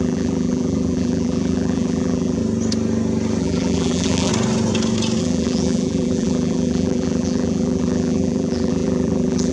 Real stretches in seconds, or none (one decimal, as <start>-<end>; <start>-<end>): 2.4-3.4; 4.3-5.2